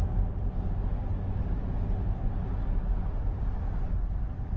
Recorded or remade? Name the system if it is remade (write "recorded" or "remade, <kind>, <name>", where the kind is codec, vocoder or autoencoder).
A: recorded